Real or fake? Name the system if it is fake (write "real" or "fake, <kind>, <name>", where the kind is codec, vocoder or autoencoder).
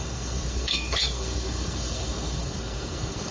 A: fake, codec, SNAC